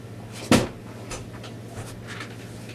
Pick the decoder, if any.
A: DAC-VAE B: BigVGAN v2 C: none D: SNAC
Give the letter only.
C